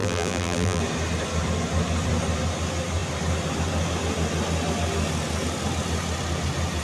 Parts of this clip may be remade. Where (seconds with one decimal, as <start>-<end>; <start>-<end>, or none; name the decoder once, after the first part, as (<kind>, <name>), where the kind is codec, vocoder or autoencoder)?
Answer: 0.0-0.8 (vocoder, BigVGAN v2)